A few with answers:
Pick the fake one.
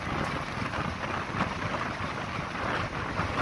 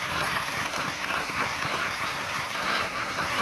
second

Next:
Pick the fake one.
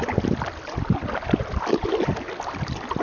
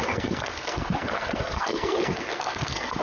second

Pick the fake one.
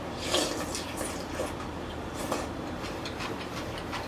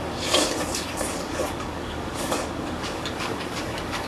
second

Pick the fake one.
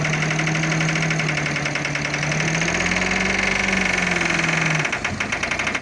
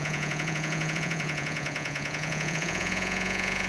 second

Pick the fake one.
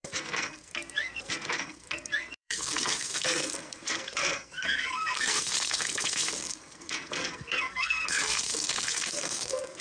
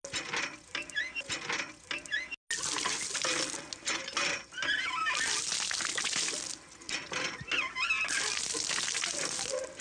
first